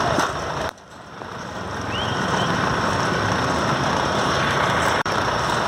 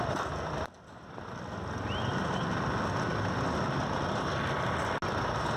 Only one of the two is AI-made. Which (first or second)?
first